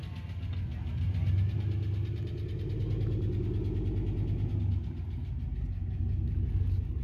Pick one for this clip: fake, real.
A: real